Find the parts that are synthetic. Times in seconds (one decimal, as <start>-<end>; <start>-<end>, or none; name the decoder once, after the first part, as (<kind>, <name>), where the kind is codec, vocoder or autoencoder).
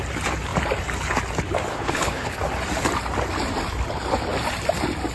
1.7-2.4 (codec, HILCodec)